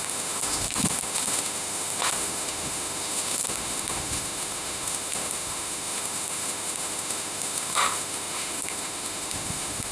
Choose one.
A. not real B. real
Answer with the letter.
A